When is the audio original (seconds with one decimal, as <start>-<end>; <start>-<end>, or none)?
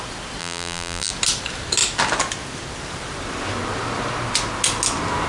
0.0-0.4; 1.1-5.3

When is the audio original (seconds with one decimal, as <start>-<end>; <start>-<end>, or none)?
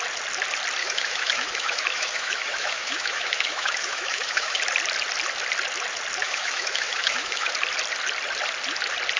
0.0-0.8; 4.6-6.2; 7.5-9.2